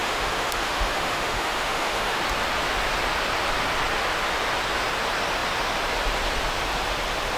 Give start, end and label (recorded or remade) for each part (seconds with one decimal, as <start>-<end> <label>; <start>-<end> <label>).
0.0-2.2 remade; 2.2-7.4 recorded